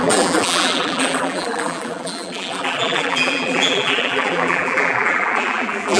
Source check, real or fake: fake